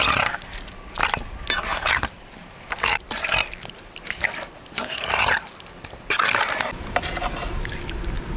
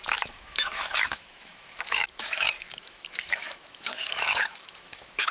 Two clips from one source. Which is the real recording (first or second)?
first